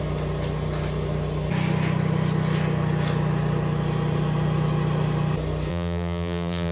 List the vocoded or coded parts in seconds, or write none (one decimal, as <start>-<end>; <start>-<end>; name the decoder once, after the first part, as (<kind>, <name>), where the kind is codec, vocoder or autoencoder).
5.7-6.7 (vocoder, BigVGAN v2)